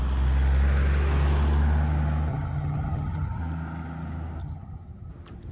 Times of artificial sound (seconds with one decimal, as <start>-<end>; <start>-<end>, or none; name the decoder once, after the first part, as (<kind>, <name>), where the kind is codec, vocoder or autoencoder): 2.3-3.4 (vocoder, HiFi-GAN); 4.4-5.1

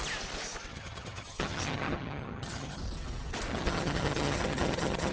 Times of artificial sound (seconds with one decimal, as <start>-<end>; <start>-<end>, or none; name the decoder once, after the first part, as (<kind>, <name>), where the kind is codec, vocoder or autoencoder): 0.7-2.8 (vocoder, HiFi-GAN); 3.5-5.1

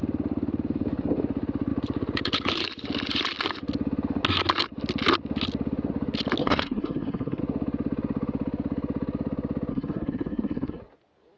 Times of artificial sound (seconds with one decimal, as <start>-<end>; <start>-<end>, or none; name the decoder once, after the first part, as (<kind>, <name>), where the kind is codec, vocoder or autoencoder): 6.4-7.4 (codec, SNAC); 9.7-10.8

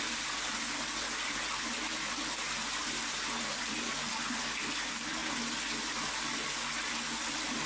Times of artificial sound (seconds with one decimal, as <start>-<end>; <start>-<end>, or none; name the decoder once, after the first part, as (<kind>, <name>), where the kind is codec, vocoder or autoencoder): none

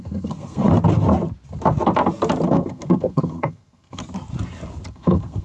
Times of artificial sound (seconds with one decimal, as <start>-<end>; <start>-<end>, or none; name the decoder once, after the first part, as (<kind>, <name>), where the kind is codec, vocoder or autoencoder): 0.0-0.7 (codec, SNAC); 2.5-4.0; 4.9-5.4